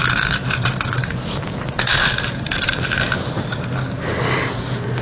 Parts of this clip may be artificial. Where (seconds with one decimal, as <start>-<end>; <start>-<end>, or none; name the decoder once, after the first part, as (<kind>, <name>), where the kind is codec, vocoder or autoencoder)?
0.4-1.4 (vocoder, BigVGAN v2); 1.9-3.5